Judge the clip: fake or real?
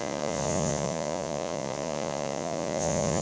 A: fake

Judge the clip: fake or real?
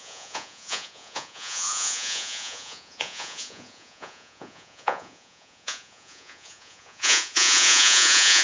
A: fake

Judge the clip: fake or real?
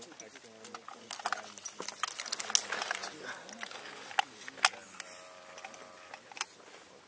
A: real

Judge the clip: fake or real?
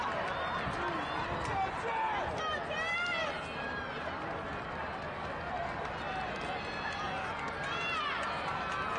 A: real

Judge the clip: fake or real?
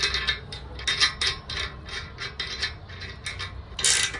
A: real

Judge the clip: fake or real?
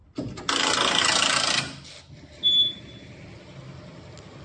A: real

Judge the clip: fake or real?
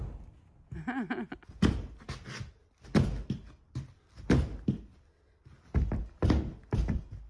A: real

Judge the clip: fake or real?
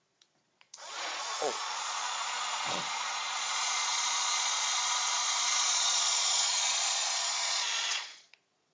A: fake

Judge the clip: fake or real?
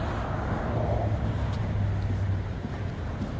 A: real